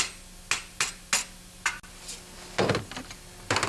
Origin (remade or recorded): recorded